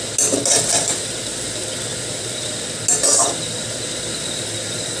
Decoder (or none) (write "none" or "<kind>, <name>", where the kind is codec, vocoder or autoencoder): none